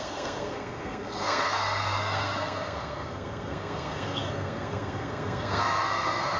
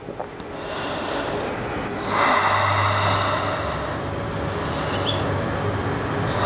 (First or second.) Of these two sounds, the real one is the second